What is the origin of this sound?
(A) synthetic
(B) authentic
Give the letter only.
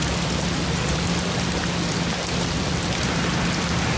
B